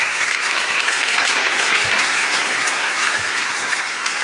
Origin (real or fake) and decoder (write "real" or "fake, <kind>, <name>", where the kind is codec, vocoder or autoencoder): fake, codec, SNAC